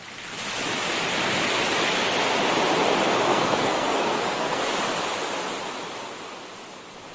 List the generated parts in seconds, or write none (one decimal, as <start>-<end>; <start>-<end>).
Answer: 3.3-4.6